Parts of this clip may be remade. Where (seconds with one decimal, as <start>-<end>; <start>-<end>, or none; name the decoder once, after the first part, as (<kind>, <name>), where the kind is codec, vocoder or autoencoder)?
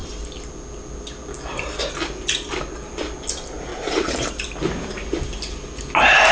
3.7-4.3 (vocoder, BigVGAN v2)